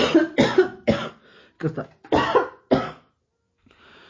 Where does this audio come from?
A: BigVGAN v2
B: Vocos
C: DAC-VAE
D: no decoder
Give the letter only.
D